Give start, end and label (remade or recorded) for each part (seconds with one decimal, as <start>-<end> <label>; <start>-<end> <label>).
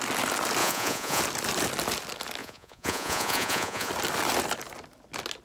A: 0.0-0.6 recorded; 0.6-1.2 remade; 1.2-2.4 recorded; 2.4-3.9 remade; 3.9-5.4 recorded